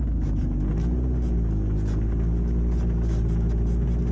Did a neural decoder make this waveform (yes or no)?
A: no